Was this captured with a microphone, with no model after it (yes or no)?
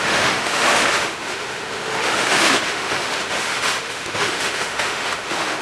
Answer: no